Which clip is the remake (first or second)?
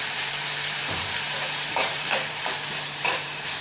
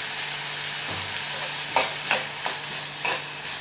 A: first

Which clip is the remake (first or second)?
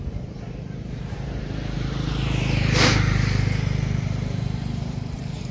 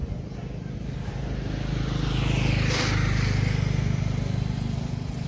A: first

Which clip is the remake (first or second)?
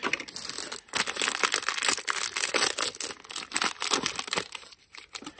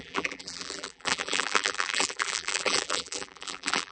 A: second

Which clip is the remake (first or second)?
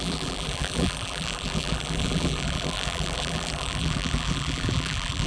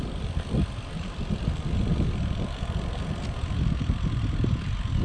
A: first